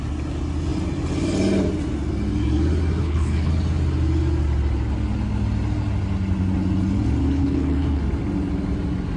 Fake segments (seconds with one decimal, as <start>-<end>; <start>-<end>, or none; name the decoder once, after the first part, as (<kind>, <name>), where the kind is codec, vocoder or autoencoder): 3.0-3.5 (codec, HILCodec); 7.2-8.0